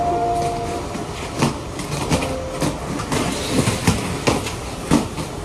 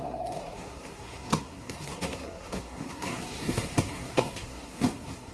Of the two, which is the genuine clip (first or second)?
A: first